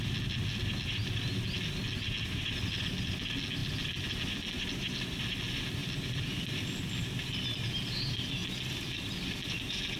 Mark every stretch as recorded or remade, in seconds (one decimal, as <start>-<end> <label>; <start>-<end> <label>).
0.0-10.0 recorded